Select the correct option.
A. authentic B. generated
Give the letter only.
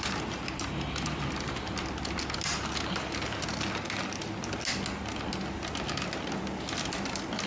A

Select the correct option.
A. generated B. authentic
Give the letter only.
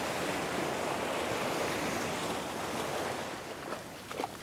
B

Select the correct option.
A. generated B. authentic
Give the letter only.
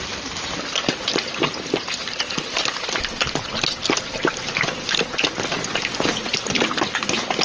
B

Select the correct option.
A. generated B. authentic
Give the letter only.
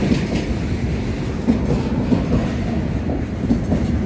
B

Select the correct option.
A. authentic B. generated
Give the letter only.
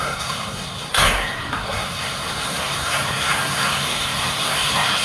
B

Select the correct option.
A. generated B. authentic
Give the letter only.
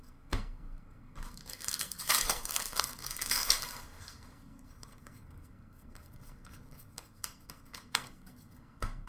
A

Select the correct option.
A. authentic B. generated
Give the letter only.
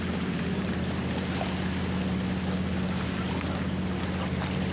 A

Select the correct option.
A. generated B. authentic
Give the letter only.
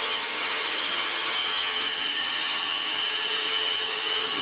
A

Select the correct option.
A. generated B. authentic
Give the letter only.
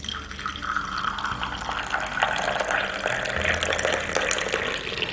B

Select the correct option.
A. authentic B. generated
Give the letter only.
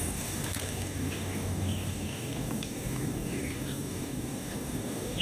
B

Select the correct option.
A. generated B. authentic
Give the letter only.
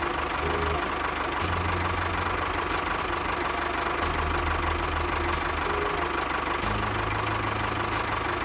B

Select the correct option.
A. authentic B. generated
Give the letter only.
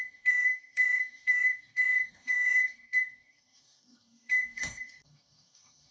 B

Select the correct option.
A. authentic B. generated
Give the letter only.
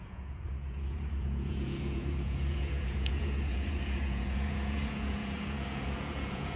B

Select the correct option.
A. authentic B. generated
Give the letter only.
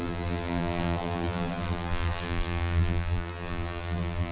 B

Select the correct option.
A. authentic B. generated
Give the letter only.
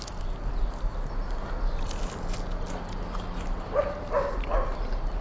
A